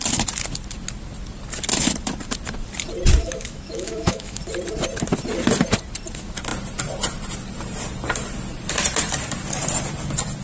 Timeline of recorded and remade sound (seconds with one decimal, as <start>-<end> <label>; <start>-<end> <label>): 0.0-3.2 recorded; 3.2-4.4 remade; 4.4-10.4 recorded